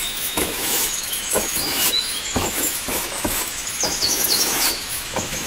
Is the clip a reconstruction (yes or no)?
yes